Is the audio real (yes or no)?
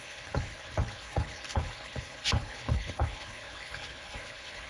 no